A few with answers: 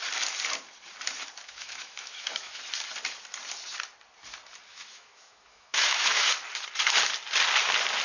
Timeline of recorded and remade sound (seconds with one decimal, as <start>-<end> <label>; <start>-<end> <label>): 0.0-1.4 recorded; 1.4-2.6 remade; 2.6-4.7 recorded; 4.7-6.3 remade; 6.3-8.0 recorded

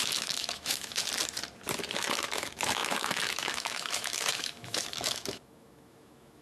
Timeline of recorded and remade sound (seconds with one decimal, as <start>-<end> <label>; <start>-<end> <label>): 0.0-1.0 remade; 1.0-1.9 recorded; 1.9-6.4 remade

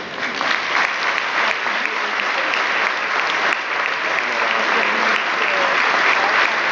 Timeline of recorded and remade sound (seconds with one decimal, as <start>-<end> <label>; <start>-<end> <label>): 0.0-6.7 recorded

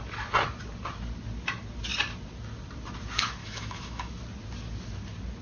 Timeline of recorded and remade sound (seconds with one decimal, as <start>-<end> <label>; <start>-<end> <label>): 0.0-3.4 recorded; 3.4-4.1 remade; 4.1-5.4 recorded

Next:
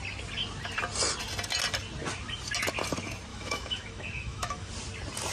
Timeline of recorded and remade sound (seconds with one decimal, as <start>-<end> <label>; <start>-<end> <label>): 0.0-3.3 recorded; 3.3-4.7 remade; 4.7-5.3 recorded

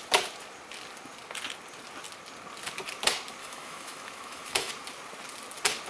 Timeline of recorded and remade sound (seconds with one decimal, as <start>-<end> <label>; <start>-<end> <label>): 0.0-3.4 recorded; 3.4-4.7 remade; 4.7-5.9 recorded

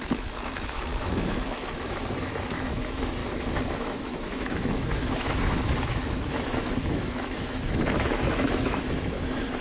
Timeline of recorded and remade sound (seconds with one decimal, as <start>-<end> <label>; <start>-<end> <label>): 0.0-3.2 remade; 3.2-3.7 recorded; 3.7-9.6 remade